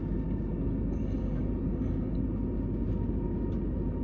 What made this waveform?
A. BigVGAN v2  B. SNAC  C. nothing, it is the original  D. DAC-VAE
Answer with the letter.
C